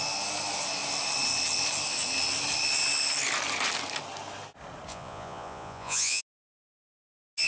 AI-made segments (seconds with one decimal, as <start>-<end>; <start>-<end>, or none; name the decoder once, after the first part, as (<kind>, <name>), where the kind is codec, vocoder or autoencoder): 4.9-6.2 (vocoder, Vocos)